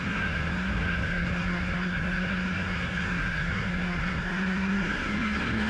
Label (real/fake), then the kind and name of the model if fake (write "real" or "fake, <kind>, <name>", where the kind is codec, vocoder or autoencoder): fake, codec, SNAC